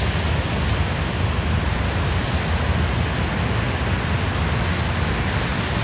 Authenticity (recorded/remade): recorded